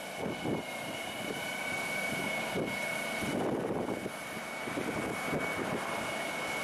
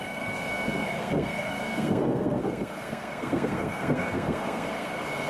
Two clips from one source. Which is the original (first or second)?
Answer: first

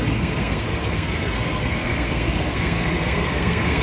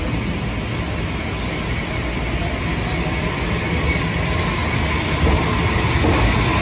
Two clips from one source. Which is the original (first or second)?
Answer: second